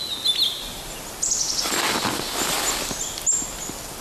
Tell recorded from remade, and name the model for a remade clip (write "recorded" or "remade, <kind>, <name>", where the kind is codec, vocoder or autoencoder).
recorded